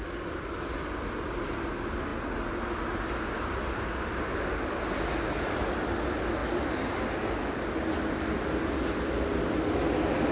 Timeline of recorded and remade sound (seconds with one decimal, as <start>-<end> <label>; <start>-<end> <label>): 0.0-10.3 recorded